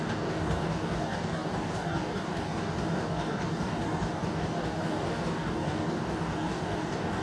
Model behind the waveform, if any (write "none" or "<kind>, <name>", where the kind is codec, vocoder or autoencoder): codec, DAC